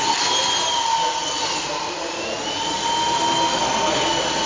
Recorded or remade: recorded